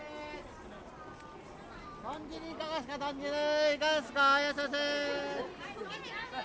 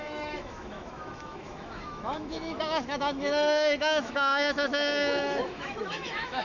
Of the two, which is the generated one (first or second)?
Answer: second